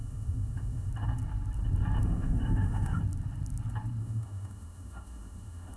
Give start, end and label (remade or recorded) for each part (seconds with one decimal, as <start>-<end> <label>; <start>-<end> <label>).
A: 0.0-0.9 remade; 0.9-2.0 recorded; 2.0-3.0 remade; 3.0-4.0 recorded; 4.0-5.8 remade